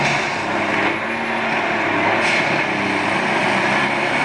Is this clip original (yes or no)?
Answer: yes